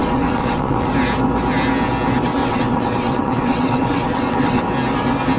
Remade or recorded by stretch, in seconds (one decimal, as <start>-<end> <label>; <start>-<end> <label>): 0.0-0.9 remade; 0.9-2.4 recorded; 2.4-4.6 remade; 4.6-5.4 recorded